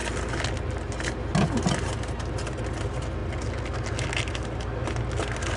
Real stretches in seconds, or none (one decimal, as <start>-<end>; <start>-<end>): 0.0-5.6